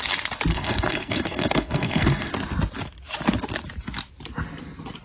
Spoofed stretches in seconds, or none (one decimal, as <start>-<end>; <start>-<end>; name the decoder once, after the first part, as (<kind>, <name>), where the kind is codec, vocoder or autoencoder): 0.5-2.3 (codec, SNAC)